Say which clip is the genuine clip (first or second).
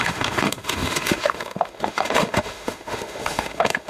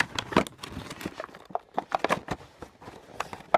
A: second